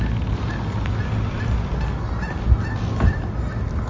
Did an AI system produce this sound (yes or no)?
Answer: no